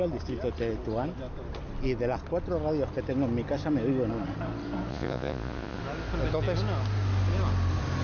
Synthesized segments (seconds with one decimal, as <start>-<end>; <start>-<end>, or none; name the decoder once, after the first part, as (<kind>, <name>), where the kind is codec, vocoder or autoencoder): 4.9-5.8 (vocoder, Vocos)